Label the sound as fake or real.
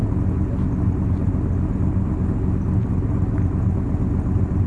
real